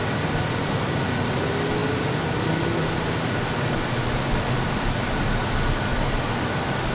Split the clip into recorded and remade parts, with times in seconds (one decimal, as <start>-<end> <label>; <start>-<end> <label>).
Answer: 0.0-6.9 recorded